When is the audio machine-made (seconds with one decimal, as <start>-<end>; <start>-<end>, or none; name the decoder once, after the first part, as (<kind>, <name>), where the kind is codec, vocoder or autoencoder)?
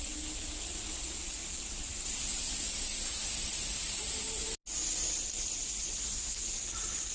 none